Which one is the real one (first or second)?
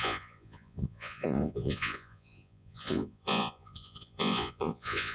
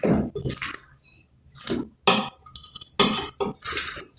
second